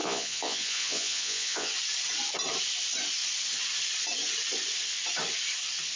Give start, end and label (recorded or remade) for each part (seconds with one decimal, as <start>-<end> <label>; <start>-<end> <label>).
0.0-1.7 remade; 1.7-6.0 recorded